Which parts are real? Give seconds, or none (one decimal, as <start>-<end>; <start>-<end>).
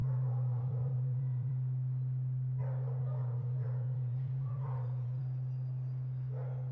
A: 1.5-3.2; 5.2-6.7